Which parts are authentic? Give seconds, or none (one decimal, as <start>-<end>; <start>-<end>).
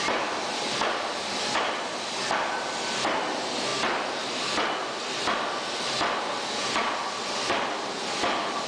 0.0-8.7